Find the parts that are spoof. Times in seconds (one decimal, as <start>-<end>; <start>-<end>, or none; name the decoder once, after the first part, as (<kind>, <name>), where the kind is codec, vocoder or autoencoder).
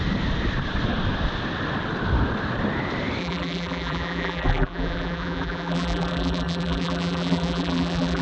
3.2-8.2 (vocoder, BigVGAN v2)